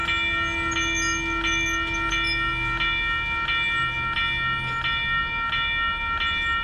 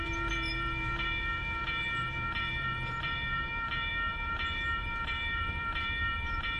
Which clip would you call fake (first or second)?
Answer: second